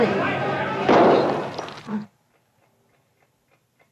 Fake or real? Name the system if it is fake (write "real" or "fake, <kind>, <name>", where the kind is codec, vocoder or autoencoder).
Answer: real